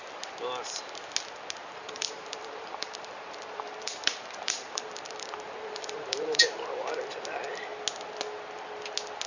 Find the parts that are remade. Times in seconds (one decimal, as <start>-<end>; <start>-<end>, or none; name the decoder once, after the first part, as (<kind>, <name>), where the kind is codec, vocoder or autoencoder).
1.6-6.8 (vocoder, BigVGAN v2)